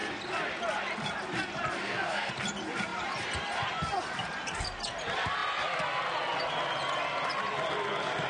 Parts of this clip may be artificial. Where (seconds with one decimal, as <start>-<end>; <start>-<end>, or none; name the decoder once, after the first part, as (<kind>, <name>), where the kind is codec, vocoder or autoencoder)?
1.8-2.3 (codec, SNAC)